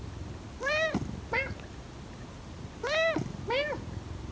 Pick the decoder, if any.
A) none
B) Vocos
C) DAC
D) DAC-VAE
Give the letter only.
A